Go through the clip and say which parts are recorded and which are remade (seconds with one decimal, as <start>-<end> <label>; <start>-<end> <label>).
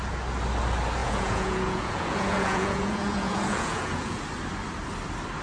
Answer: 0.0-1.0 recorded; 1.0-4.2 remade; 4.2-5.4 recorded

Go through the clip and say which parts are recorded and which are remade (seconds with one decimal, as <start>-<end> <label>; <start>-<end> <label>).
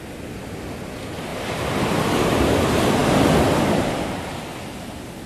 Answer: 0.0-1.3 recorded; 1.3-2.6 remade; 2.6-5.3 recorded